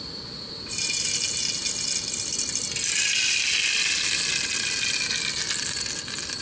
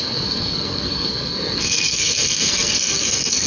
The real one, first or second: first